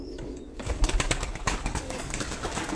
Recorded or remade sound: remade